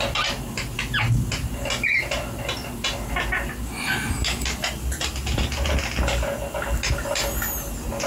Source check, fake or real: real